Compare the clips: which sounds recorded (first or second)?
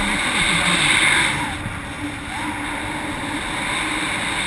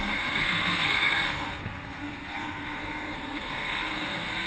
first